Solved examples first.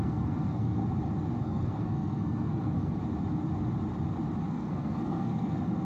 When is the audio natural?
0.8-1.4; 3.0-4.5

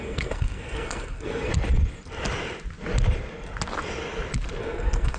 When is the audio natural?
1.5-4.6

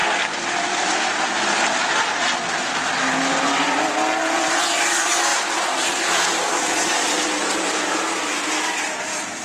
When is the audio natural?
0.0-4.2